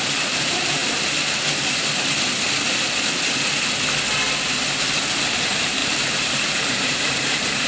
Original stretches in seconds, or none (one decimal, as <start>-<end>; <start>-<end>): 0.8-5.3